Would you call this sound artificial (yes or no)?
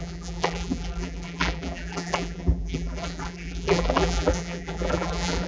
yes